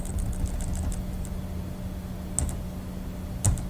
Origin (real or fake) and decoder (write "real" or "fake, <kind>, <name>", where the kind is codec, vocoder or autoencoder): real